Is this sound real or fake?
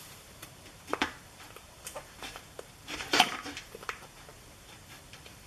fake